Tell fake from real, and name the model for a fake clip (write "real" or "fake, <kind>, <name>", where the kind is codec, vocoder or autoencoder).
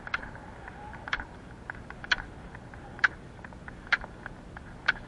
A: real